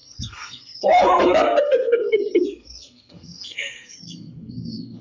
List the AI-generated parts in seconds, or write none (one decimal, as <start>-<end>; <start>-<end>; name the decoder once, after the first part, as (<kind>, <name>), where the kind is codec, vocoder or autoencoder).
0.0-5.0 (codec, SNAC)